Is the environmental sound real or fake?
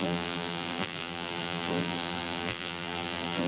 fake